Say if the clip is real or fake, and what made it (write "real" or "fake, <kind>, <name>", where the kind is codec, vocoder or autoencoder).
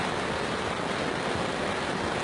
real